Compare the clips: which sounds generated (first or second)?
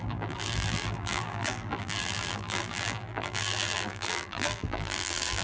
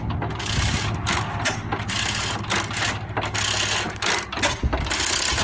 first